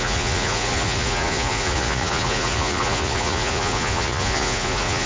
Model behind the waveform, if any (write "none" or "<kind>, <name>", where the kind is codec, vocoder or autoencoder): vocoder, Vocos